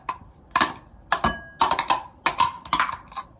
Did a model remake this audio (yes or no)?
no